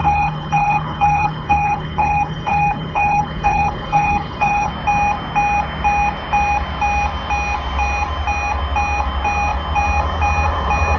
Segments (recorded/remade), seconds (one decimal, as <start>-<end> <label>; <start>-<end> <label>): 0.0-4.7 remade; 4.7-11.0 recorded